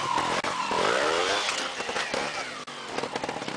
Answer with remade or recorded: recorded